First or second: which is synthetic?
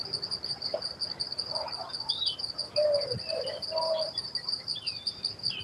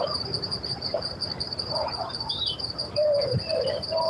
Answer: second